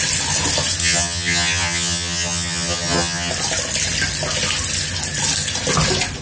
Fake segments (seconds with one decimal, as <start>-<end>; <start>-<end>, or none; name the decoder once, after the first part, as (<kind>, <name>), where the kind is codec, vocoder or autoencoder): 0.8-3.3 (vocoder, HiFi-GAN)